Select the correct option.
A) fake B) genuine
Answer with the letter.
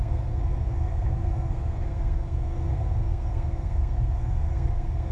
A